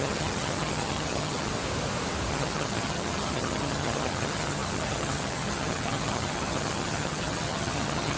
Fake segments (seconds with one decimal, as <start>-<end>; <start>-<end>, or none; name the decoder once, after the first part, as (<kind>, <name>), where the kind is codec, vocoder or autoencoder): 0.0-1.5 (vocoder, HiFi-GAN); 2.3-8.2